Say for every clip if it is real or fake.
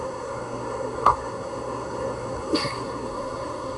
fake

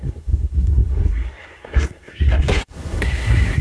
fake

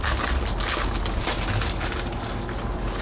real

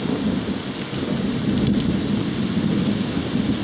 real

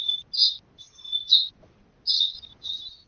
real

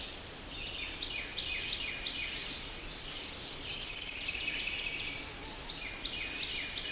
real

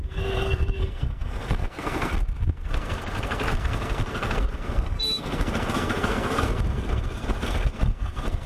fake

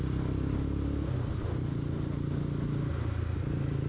real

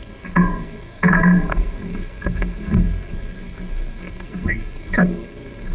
fake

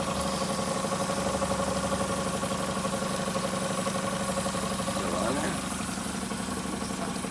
real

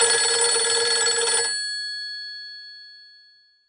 real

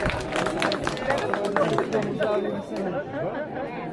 real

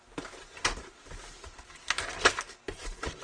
real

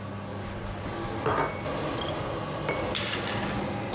real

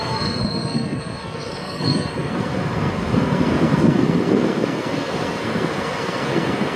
fake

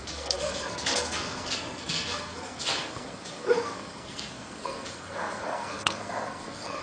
fake